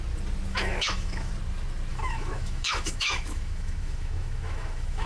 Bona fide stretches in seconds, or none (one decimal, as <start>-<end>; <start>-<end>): 0.0-0.5; 1.3-1.9